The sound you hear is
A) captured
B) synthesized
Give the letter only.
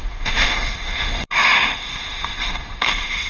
B